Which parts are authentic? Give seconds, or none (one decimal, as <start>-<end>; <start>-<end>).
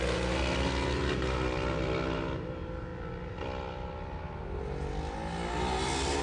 0.0-6.2